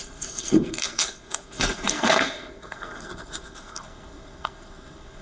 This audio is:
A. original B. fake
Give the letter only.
B